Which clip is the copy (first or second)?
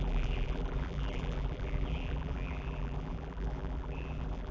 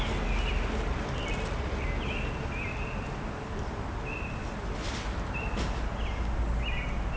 first